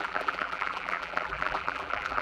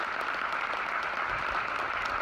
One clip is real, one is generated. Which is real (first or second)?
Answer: second